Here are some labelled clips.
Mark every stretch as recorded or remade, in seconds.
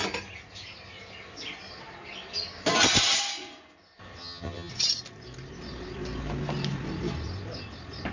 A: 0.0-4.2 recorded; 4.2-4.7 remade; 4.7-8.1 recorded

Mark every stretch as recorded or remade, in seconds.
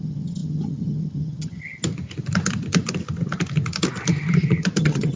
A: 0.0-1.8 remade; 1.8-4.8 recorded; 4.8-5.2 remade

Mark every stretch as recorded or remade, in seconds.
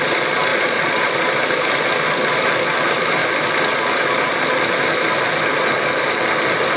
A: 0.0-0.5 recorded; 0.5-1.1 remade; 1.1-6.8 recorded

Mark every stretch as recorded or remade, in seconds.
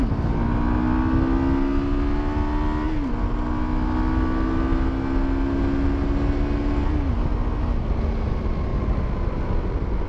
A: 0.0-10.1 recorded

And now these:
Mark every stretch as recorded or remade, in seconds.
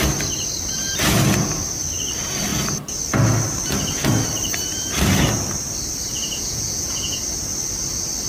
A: 0.0-6.1 recorded; 6.1-7.2 remade; 7.2-8.3 recorded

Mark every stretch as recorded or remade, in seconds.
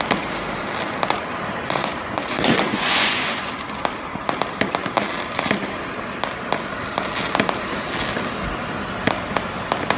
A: 0.0-1.6 recorded; 1.6-3.5 remade; 3.5-10.0 recorded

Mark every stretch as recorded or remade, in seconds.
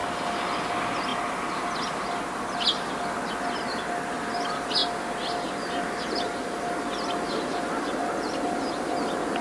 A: 0.0-9.4 recorded